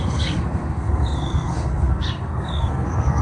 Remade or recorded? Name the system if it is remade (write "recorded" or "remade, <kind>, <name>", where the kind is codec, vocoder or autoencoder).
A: remade, codec, SNAC